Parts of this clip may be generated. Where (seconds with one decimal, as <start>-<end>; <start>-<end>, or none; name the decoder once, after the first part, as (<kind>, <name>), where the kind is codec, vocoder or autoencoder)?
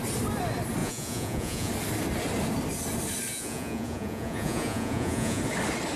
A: 0.8-1.7 (vocoder, Vocos); 3.3-5.4